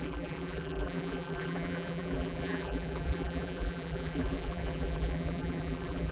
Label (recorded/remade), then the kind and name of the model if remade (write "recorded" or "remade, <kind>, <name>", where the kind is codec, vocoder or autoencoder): remade, vocoder, BigVGAN v2